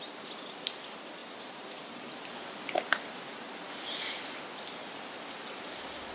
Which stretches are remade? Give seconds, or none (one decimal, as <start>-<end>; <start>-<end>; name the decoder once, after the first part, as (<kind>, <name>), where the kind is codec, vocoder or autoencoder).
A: none

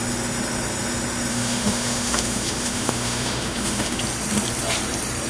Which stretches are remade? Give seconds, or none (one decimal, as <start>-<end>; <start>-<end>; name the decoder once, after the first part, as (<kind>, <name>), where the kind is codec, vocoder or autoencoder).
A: 1.3-4.0 (autoencoder, DAC-VAE)

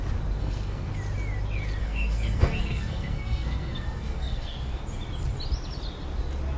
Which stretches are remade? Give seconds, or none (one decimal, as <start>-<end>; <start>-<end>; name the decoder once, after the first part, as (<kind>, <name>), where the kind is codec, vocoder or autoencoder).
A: 0.4-0.9 (codec, SNAC); 1.8-4.8

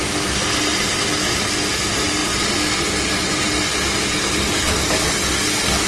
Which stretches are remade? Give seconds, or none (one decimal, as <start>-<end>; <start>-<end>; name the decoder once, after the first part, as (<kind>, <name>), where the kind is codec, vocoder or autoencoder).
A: none

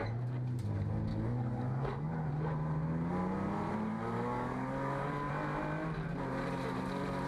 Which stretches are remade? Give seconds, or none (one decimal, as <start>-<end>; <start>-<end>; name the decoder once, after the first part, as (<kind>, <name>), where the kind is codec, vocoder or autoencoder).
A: 1.1-2.3 (codec, DAC); 3.9-5.3